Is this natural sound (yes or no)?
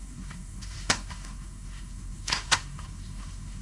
no